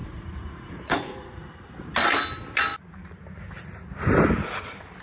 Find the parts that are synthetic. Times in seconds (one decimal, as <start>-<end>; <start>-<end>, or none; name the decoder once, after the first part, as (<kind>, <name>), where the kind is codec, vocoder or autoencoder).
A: 0.0-1.9 (vocoder, Vocos)